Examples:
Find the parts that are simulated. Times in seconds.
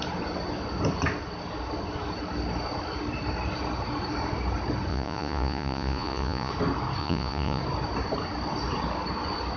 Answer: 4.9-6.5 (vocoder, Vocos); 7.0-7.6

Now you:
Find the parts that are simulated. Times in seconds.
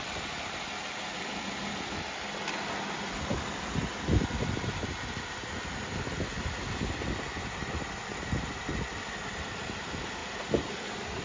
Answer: none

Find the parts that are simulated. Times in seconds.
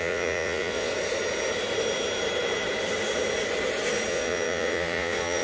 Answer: 0.0-0.9 (vocoder, Vocos); 4.1-5.4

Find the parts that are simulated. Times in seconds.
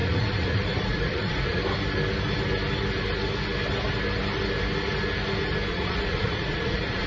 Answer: 0.0-1.6 (vocoder, Vocos); 5.7-7.1